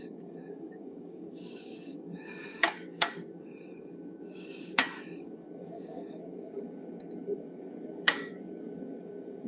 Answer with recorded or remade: remade